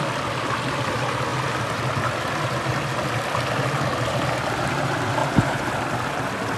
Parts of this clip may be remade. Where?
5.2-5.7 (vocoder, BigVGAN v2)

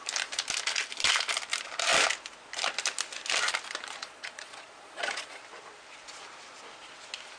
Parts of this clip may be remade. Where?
4.0-5.4 (vocoder, Vocos)

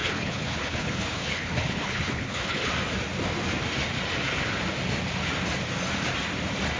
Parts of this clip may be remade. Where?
0.0-2.7 (codec, HILCodec)

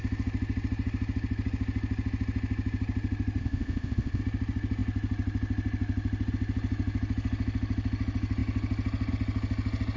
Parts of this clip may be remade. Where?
3.4-4.2 (codec, ZipCodec)